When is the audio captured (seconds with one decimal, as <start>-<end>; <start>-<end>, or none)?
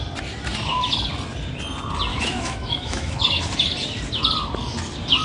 0.0-2.1; 3.4-5.2